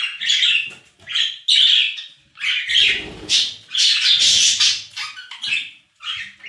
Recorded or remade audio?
recorded